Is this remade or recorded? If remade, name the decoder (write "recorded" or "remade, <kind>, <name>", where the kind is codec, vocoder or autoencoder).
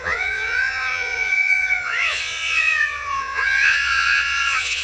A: remade, vocoder, Vocos